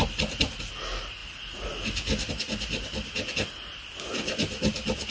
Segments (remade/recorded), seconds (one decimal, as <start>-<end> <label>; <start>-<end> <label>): 0.0-5.1 recorded